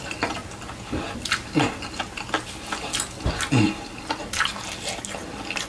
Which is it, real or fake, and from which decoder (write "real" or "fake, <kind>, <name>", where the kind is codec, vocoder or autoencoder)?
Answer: real